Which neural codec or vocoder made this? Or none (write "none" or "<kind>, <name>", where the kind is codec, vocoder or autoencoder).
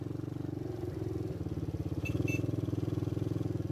none